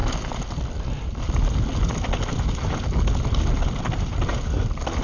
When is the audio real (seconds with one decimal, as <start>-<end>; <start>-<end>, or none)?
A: 0.0-5.0